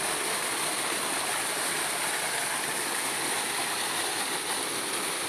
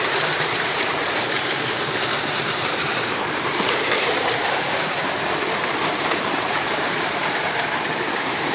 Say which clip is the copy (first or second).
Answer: second